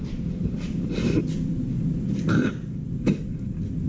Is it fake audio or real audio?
real